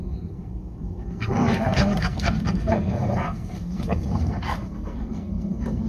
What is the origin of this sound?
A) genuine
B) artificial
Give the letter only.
B